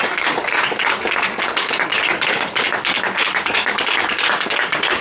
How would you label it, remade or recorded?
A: remade